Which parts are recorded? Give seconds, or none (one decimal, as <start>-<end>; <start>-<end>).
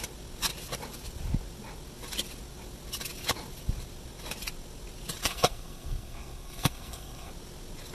0.0-5.2; 7.3-7.9